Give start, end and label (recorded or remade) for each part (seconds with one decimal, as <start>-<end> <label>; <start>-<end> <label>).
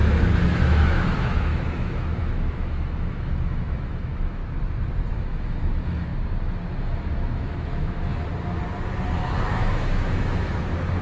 0.0-4.4 remade; 4.4-5.1 recorded; 5.1-6.1 remade; 6.1-6.8 recorded; 6.8-8.1 remade; 8.1-9.5 recorded; 9.5-11.0 remade